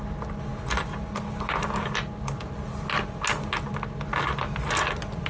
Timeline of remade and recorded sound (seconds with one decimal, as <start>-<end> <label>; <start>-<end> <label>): 0.0-5.3 recorded